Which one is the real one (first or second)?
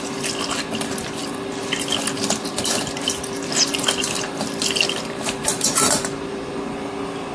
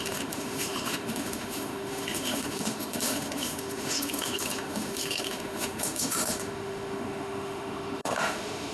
first